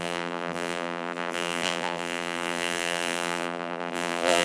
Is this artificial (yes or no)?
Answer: yes